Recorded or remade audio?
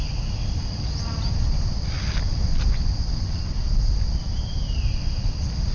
recorded